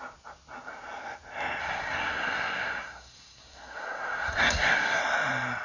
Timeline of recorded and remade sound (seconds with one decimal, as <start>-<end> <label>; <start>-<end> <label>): 0.0-1.6 recorded; 1.6-5.0 remade; 5.0-5.6 recorded